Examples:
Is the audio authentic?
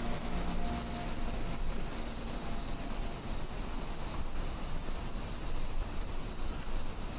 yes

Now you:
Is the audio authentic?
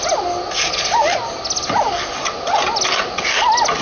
yes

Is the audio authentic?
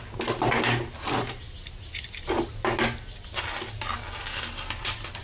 yes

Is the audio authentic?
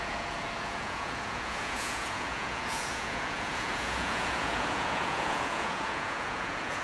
no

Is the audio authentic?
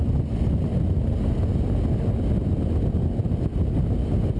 yes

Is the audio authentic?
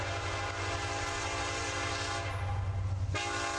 yes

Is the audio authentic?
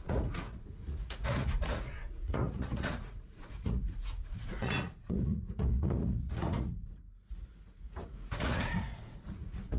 no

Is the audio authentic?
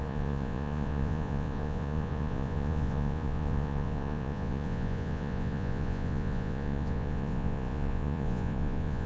no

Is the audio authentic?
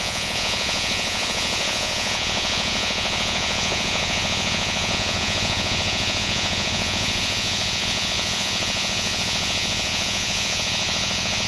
no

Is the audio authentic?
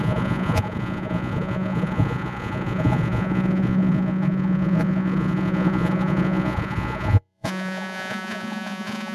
no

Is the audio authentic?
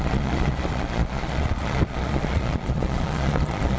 no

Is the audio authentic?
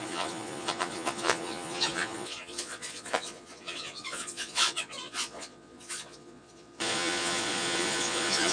no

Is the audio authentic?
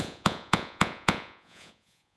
no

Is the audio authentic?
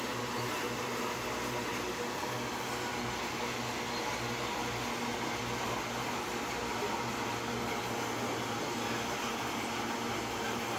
yes